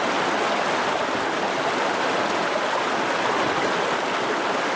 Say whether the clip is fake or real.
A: real